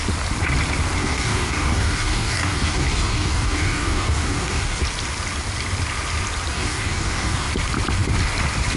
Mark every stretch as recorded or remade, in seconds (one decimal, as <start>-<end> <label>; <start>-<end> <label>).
0.0-1.0 recorded; 1.0-4.8 remade; 4.8-6.5 recorded; 6.5-7.5 remade; 7.5-8.8 recorded